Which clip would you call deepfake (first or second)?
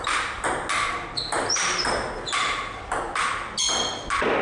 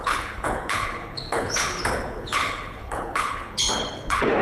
second